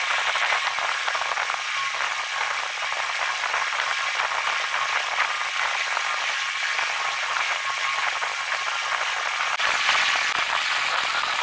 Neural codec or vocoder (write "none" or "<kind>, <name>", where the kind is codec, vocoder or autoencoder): none